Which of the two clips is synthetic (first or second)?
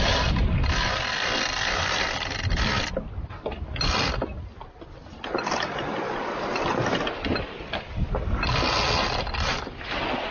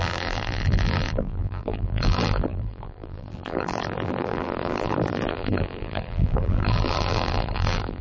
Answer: second